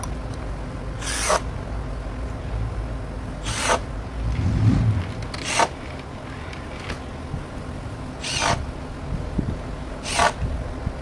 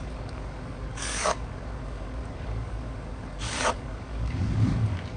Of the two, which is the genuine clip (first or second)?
first